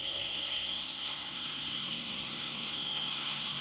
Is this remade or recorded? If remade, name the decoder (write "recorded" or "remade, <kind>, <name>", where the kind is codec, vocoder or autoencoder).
remade, codec, SNAC